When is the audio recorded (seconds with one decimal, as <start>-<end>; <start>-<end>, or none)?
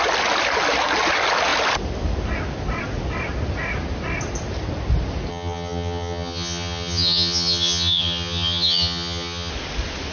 0.0-5.3; 9.5-10.1